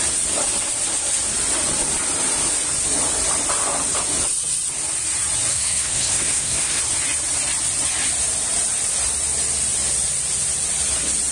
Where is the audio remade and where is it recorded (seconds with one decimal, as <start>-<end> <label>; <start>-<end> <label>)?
0.0-5.5 recorded; 5.5-6.8 remade; 6.8-11.3 recorded